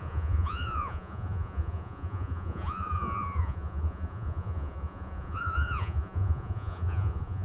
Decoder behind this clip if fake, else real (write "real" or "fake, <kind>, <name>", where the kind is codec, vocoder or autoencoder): fake, vocoder, Vocos